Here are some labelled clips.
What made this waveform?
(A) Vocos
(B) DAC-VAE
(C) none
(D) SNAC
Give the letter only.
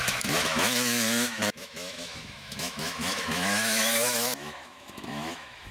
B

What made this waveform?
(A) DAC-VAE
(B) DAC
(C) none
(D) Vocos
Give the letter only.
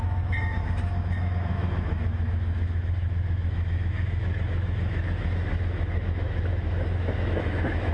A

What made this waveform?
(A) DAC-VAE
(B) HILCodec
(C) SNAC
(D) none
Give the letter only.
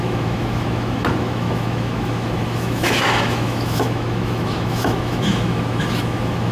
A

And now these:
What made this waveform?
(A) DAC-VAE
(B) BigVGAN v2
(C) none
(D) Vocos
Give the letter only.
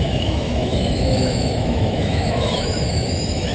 A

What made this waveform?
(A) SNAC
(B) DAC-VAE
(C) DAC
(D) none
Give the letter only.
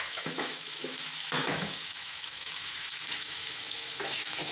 B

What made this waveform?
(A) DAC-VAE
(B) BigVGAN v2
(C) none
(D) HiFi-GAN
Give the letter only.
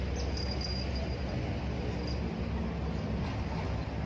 C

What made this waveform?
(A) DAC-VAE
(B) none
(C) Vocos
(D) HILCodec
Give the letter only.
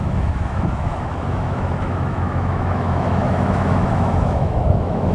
A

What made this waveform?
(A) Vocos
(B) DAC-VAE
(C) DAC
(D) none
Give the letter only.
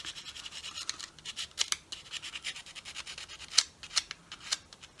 D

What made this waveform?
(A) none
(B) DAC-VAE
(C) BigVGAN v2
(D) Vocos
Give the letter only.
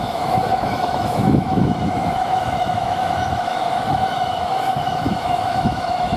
B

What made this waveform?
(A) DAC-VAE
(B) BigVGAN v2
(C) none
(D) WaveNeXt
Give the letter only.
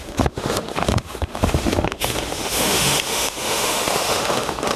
A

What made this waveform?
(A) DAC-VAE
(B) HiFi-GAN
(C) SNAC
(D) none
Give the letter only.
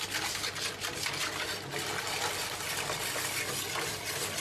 D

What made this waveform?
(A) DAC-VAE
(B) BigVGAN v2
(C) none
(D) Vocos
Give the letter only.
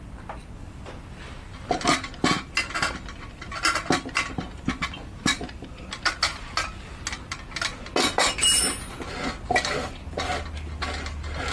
C